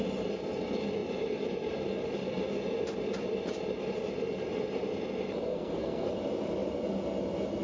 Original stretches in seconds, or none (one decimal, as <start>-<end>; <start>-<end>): 0.0-5.5; 6.1-7.6

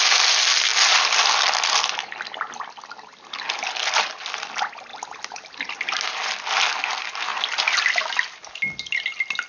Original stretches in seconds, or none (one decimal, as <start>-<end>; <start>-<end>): 0.0-9.5

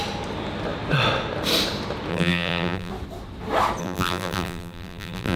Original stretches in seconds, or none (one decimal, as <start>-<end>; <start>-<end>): 0.0-2.1; 2.9-3.8

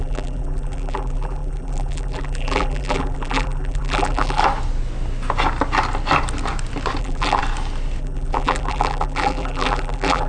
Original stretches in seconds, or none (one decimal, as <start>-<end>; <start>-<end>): 4.4-7.0; 7.4-8.0

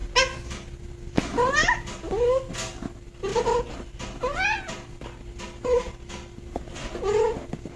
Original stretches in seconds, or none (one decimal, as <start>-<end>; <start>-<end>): 0.0-3.3; 4.0-7.8